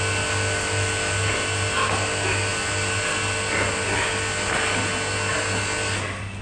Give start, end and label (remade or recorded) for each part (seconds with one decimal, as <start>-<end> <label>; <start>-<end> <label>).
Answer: 0.0-6.4 recorded